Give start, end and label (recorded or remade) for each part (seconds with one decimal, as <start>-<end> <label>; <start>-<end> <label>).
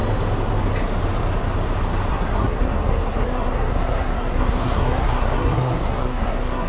0.0-2.1 recorded; 2.1-6.7 remade